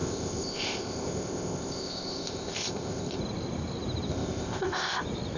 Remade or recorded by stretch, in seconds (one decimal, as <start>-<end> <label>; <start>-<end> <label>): 0.0-3.2 remade; 3.2-4.1 recorded; 4.1-5.0 remade; 5.0-5.4 recorded